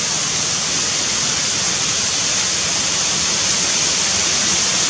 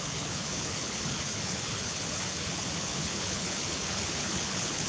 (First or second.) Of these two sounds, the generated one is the second